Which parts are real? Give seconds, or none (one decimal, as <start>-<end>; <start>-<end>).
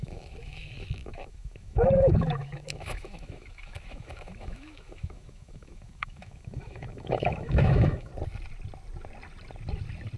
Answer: 8.1-10.2